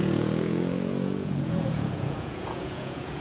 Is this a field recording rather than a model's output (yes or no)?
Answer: no